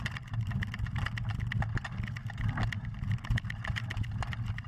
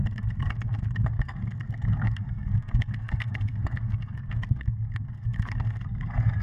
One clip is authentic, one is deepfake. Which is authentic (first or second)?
first